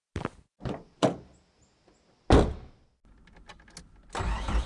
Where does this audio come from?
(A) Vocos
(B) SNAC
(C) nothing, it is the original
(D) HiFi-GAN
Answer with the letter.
C